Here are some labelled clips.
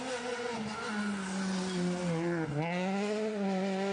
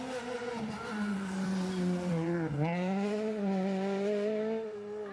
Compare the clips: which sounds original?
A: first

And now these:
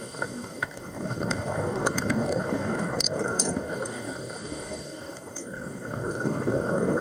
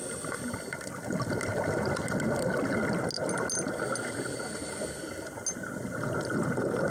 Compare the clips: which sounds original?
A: second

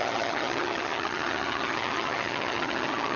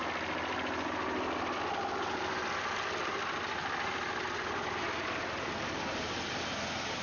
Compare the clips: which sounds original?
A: second